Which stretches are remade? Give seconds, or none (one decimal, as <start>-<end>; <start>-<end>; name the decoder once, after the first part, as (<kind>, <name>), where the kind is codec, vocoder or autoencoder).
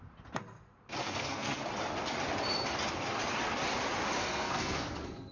1.0-1.6 (codec, SNAC); 4.2-5.3